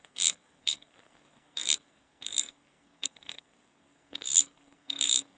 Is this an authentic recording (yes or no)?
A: no